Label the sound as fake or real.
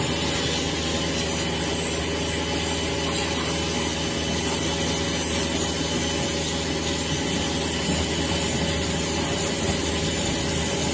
real